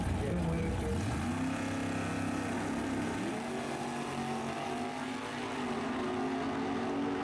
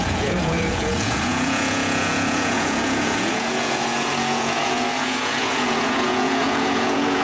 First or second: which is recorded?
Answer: first